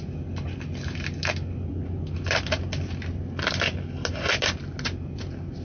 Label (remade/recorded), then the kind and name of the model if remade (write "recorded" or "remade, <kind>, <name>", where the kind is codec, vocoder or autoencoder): recorded